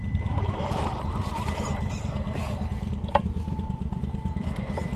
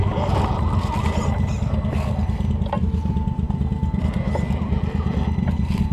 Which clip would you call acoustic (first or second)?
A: second